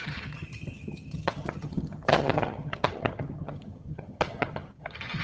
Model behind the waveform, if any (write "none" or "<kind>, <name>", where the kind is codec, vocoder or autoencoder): vocoder, HiFi-GAN